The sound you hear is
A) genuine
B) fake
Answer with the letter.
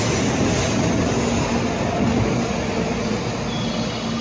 A